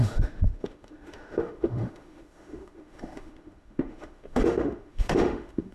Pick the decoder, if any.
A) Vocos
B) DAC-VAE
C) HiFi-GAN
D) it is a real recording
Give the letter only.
B